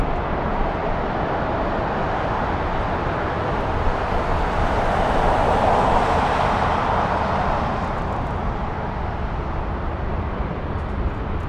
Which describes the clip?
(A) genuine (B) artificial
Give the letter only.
A